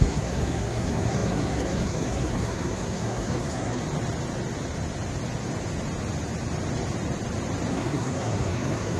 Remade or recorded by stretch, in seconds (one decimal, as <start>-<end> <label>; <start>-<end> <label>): 0.0-3.8 remade; 3.8-7.7 recorded; 7.7-9.0 remade